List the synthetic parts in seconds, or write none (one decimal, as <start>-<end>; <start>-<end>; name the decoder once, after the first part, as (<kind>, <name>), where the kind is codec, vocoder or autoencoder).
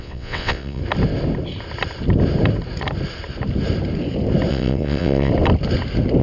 0.0-0.8 (vocoder, WaveNeXt); 4.5-5.3